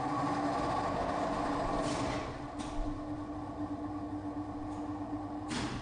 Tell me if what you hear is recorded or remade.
recorded